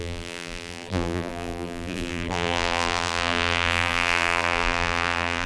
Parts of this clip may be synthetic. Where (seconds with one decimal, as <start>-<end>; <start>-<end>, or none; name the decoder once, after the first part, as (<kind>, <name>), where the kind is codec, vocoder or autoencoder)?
0.0-5.5 (vocoder, BigVGAN v2)